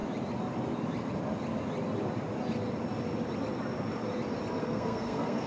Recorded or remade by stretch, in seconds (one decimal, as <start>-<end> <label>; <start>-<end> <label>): 0.0-4.6 recorded; 4.6-5.5 remade